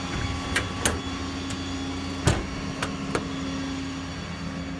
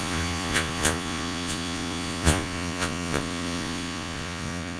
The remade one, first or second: second